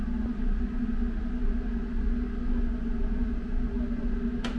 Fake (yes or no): no